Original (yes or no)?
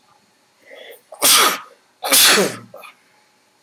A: yes